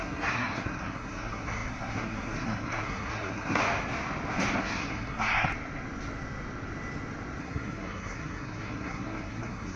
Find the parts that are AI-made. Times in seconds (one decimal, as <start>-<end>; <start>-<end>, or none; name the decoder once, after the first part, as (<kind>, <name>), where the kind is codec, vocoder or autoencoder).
0.0-3.6 (codec, SNAC); 4.6-5.5; 7.4-9.8